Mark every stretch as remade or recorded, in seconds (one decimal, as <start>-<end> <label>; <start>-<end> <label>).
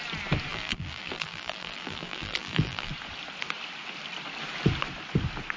0.0-0.5 recorded; 0.5-2.9 remade; 2.9-5.6 recorded